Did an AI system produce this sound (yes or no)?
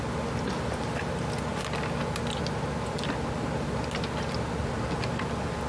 no